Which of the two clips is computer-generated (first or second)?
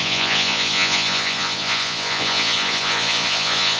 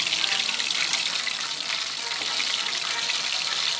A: first